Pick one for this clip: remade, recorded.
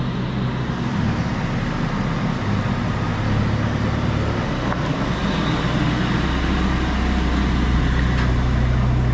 recorded